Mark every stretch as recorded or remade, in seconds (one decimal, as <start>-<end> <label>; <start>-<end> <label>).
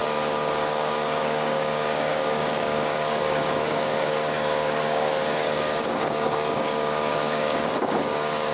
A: 0.0-8.5 remade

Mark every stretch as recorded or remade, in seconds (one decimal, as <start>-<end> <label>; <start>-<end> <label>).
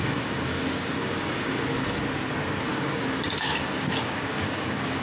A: 0.0-2.0 remade; 2.0-2.6 recorded; 2.6-5.0 remade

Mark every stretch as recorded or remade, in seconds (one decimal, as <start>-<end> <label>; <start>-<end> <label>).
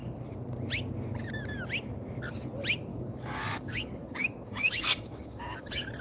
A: 0.0-2.9 recorded; 2.9-6.0 remade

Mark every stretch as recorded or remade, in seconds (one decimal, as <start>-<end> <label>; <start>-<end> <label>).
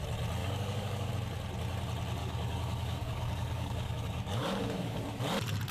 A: 0.0-0.4 recorded; 0.4-1.1 remade; 1.1-2.2 recorded; 2.2-5.0 remade; 5.0-5.7 recorded